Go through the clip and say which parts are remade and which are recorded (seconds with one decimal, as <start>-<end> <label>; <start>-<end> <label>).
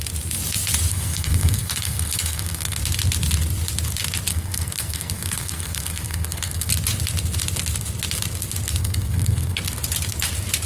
0.0-0.9 recorded; 0.9-2.8 remade; 2.8-4.3 recorded; 4.3-6.7 remade; 6.7-8.8 recorded; 8.8-9.6 remade; 9.6-10.7 recorded